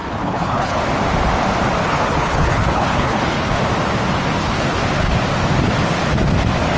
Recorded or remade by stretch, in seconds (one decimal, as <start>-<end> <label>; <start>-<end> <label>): 0.0-0.8 remade; 0.8-1.8 recorded; 1.8-3.6 remade; 3.6-4.4 recorded; 4.4-5.1 remade; 5.1-6.8 recorded